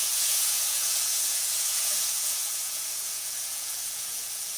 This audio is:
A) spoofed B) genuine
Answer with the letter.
A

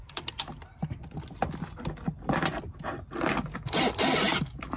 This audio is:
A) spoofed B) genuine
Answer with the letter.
B